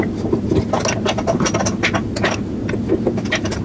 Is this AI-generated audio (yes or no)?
no